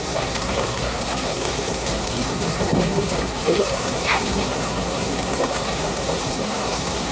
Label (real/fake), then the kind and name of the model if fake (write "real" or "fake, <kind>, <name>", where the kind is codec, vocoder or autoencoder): fake, codec, SNAC